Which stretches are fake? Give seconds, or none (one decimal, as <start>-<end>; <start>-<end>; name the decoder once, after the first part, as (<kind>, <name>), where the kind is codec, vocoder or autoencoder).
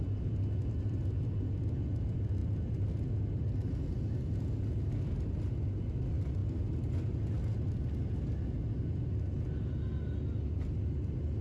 none